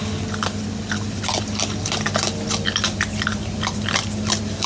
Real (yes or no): yes